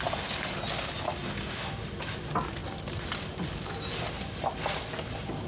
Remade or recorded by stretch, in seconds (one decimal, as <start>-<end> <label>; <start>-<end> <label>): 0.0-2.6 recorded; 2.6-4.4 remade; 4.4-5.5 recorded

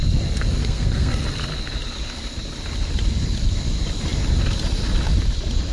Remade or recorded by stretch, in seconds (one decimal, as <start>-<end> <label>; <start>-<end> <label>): 0.0-0.6 recorded; 0.6-1.2 remade; 1.2-5.7 recorded

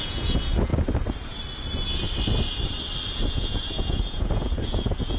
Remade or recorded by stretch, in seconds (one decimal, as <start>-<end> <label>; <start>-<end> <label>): 0.0-0.7 remade; 0.7-3.3 recorded; 3.3-5.2 remade